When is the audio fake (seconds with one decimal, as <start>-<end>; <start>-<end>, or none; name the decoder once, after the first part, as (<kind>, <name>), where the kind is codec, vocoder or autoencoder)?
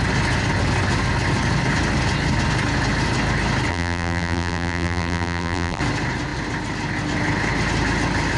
3.7-5.8 (vocoder, BigVGAN v2)